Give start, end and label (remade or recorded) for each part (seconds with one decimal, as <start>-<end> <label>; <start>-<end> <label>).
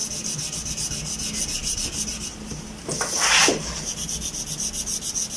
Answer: 0.0-1.6 recorded; 1.6-2.8 remade; 2.8-3.4 recorded; 3.4-4.4 remade; 4.4-5.4 recorded